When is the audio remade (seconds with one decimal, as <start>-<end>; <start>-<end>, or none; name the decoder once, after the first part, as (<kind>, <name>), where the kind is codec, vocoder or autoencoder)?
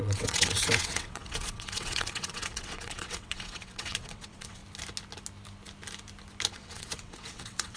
0.0-4.6 (vocoder, WaveNeXt); 6.5-7.8